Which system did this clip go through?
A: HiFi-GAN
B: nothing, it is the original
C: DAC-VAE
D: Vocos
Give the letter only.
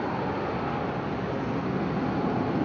B